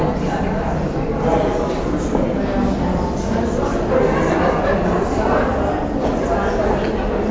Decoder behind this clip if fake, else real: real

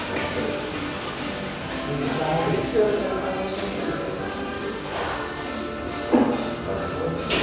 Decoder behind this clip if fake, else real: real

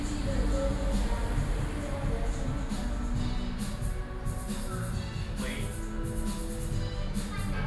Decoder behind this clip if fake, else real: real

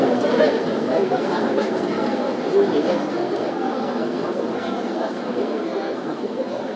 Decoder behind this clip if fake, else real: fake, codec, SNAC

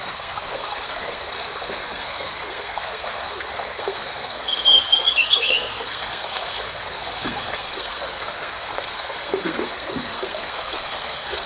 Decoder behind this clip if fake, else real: fake, codec, SNAC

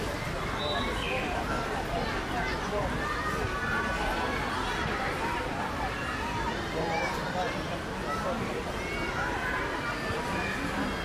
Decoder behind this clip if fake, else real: real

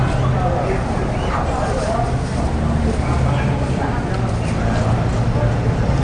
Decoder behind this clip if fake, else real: real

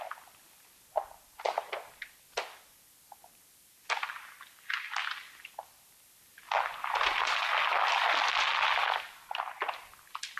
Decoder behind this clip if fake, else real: real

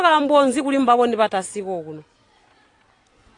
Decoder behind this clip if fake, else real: real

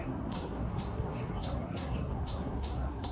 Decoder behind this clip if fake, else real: fake, codec, SNAC